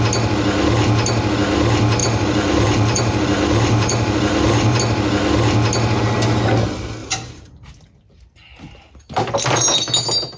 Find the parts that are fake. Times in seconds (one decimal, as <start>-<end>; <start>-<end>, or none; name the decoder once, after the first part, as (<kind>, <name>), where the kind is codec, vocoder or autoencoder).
2.0-4.8 (vocoder, BigVGAN v2); 7.0-7.7